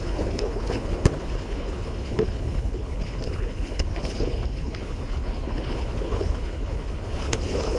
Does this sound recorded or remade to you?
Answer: remade